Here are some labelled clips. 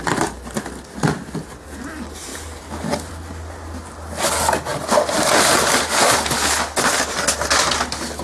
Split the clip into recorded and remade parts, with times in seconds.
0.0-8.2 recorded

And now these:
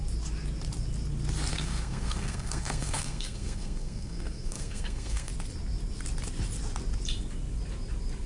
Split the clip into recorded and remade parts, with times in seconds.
0.0-1.5 recorded; 1.5-5.3 remade; 5.3-8.3 recorded

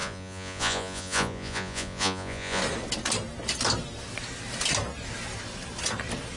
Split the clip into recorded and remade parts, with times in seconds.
0.0-2.6 remade; 2.6-6.4 recorded

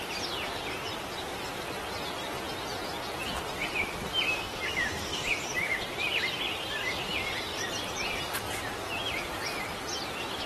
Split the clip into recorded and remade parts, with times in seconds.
0.0-4.3 recorded; 4.3-7.0 remade; 7.0-10.5 recorded

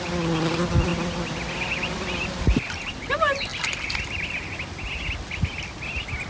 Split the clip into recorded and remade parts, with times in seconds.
0.0-6.3 recorded

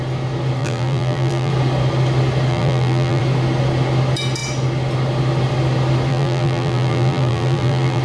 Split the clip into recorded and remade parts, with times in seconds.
0.0-0.6 recorded; 0.6-1.5 remade; 1.5-2.5 recorded; 2.5-3.2 remade; 3.2-6.1 recorded; 6.1-8.0 remade

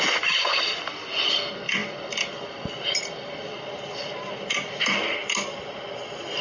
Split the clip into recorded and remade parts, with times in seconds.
0.0-6.4 recorded

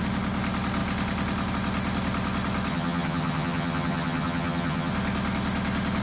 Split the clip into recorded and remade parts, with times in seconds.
0.0-2.7 recorded; 2.7-4.9 remade; 4.9-6.0 recorded